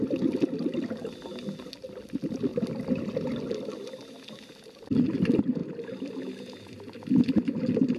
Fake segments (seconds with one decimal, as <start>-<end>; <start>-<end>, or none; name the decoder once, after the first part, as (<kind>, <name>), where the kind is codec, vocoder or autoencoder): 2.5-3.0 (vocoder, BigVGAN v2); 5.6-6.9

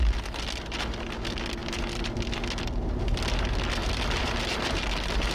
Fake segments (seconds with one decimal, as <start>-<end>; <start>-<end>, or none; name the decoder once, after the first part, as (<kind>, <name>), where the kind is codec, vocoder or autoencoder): 3.8-4.4 (vocoder, BigVGAN v2)

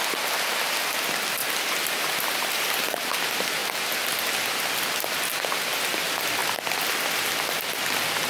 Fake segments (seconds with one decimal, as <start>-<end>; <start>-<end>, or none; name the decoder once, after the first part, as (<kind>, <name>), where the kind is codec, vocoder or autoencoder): 1.4-3.2 (vocoder, BigVGAN v2)

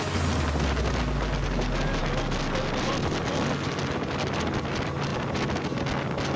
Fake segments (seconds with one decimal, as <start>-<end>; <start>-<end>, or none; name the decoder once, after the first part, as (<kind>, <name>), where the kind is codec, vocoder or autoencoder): none

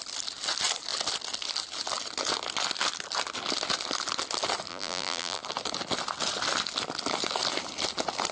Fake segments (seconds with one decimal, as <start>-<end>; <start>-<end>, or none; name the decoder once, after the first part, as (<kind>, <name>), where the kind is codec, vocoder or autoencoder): 4.7-5.4 (vocoder, BigVGAN v2)